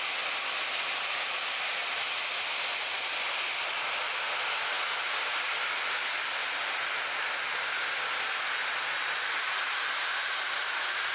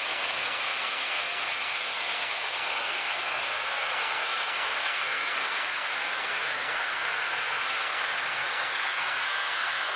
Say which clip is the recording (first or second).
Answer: first